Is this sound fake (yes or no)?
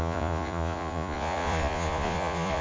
yes